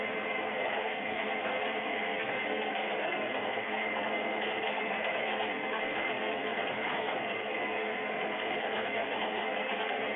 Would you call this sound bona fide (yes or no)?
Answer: no